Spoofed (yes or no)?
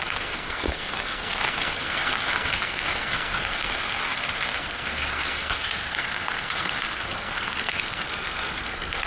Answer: yes